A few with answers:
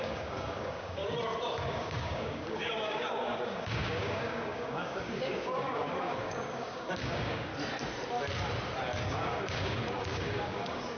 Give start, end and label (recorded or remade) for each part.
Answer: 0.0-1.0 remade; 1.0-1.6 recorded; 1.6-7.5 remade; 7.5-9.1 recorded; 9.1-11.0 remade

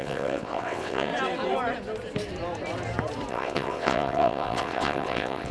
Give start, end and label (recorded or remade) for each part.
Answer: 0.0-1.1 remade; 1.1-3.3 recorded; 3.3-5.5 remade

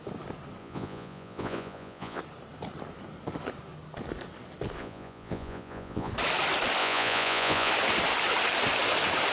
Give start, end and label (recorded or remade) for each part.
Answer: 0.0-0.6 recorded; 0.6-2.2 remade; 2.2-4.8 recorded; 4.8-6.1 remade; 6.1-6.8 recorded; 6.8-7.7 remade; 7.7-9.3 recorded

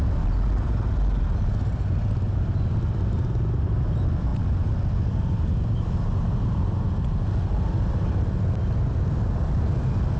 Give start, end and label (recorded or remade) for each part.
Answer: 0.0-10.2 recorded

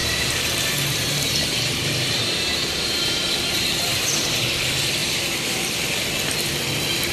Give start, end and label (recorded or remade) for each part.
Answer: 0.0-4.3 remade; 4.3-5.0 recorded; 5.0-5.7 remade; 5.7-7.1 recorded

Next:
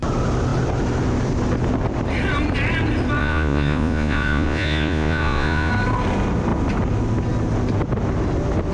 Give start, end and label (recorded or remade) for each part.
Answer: 0.0-3.2 recorded; 3.2-5.7 remade; 5.7-8.7 recorded